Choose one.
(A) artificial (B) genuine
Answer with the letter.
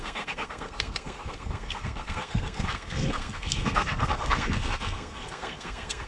A